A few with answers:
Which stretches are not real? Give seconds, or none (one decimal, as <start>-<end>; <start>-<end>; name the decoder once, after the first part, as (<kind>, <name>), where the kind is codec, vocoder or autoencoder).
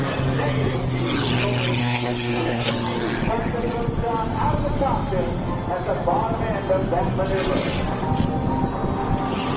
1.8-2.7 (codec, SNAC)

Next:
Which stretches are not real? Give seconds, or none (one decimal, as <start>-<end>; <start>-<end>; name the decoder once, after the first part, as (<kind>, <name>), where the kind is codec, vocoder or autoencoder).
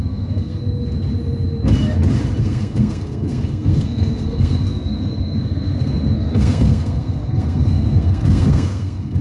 0.0-0.6 (codec, SNAC); 2.4-9.2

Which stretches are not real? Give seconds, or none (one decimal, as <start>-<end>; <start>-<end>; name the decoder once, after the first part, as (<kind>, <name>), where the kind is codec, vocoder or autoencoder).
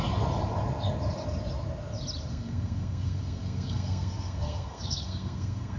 2.3-5.8 (codec, SNAC)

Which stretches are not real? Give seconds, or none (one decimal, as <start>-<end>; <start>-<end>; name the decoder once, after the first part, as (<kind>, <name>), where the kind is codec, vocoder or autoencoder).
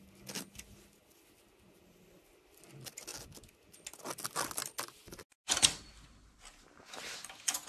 none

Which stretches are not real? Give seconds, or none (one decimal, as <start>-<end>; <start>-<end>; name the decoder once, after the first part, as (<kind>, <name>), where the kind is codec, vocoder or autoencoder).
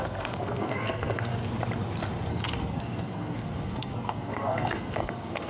0.0-1.3 (codec, SNAC); 2.3-5.5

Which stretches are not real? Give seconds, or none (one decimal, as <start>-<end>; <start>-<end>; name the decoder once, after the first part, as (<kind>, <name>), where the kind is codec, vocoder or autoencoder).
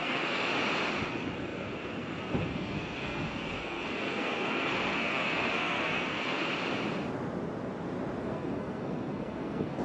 0.0-0.5 (codec, SNAC); 1.1-6.4; 8.2-9.8